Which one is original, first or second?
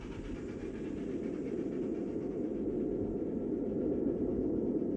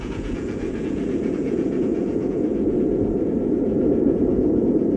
first